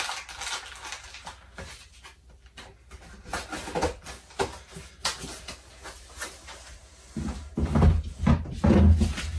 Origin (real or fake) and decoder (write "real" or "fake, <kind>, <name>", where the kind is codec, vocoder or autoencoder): real